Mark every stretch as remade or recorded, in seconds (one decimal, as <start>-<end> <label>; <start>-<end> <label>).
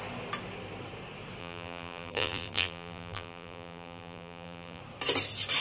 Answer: 0.0-1.4 recorded; 1.4-4.8 remade; 4.8-5.6 recorded